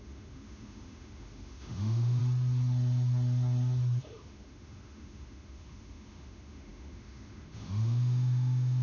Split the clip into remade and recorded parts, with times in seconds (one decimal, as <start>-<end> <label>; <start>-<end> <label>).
0.0-2.2 remade; 2.2-4.0 recorded; 4.0-8.8 remade